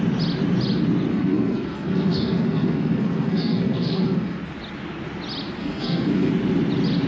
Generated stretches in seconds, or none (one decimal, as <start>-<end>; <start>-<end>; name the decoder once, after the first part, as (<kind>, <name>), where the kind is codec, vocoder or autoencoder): 1.1-4.4 (codec, SNAC); 5.6-6.3